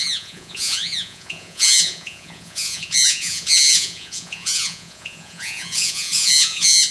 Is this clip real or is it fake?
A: fake